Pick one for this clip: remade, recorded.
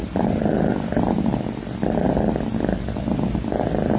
recorded